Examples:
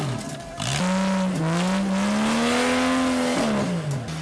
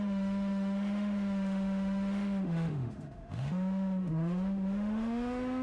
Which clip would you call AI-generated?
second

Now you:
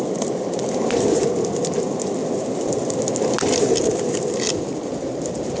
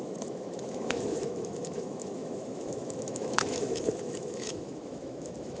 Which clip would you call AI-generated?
second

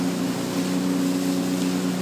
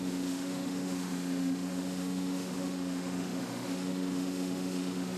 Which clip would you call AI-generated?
second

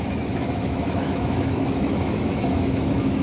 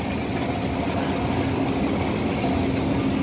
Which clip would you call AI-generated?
first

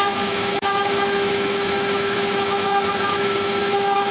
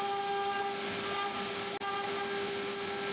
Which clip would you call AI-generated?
first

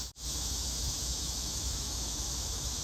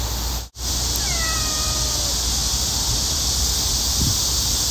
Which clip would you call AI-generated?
first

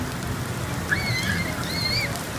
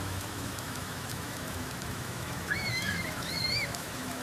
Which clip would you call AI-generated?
second